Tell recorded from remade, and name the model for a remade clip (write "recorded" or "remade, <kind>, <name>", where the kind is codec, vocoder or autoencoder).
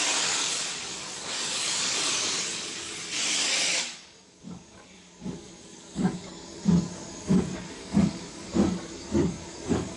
remade, codec, DAC